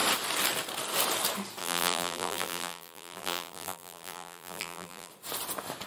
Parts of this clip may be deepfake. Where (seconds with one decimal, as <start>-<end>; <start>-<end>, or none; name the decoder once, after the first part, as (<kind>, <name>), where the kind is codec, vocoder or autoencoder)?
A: 1.6-5.1 (vocoder, BigVGAN v2)